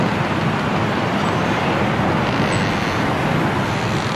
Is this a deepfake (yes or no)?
no